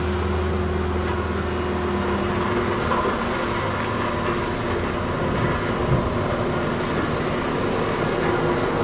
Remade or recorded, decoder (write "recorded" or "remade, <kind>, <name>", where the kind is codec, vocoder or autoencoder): recorded